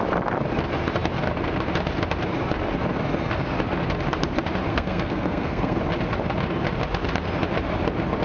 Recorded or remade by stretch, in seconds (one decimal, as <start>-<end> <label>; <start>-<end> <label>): 0.0-4.7 recorded; 4.7-5.8 remade; 5.8-8.2 recorded